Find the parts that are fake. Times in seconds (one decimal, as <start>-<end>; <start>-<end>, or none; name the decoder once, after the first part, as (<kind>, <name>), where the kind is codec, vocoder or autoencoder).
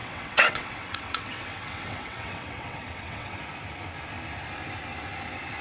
0.0-3.4 (vocoder, WaveNeXt)